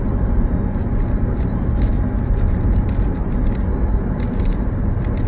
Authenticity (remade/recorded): recorded